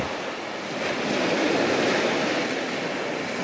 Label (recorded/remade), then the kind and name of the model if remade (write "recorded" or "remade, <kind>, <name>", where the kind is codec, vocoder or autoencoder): recorded